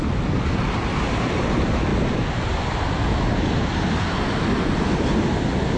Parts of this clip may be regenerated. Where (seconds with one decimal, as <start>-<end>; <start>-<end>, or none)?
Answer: none